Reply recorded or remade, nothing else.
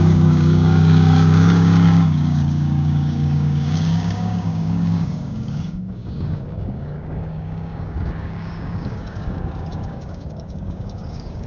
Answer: remade